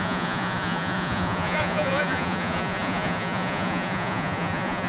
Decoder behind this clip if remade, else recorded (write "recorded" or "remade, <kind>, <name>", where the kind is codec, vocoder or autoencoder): remade, vocoder, Vocos